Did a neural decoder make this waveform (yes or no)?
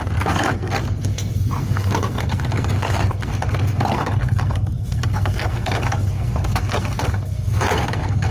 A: yes